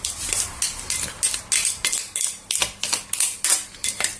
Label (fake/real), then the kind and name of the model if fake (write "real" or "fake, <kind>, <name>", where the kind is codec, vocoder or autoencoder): real